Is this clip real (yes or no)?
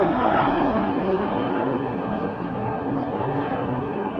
no